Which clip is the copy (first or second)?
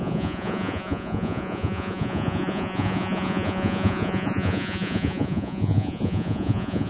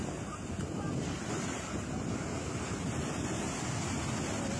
first